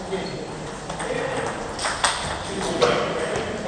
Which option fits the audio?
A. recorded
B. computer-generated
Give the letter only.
A